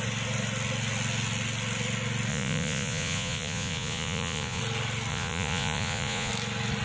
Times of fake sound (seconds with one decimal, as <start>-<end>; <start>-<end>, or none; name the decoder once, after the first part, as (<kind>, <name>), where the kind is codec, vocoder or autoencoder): 2.3-4.6 (vocoder, Vocos); 5.1-6.3